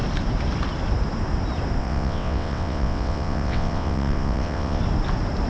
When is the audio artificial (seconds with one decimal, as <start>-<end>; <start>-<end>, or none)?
1.8-4.8